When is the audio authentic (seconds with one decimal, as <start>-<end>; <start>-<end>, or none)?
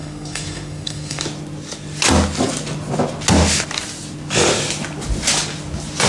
1.2-6.1